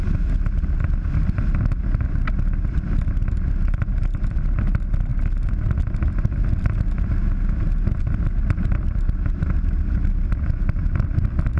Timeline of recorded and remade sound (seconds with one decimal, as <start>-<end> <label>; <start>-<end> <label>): 0.0-11.6 recorded